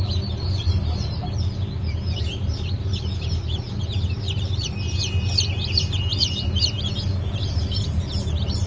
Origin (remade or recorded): remade